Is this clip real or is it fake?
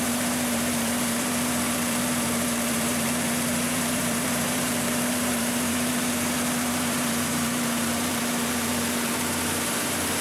fake